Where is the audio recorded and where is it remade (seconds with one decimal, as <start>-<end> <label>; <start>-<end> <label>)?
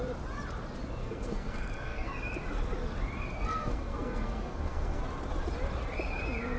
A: 0.0-1.0 recorded; 1.0-2.1 remade; 2.1-3.5 recorded; 3.5-5.0 remade; 5.0-6.6 recorded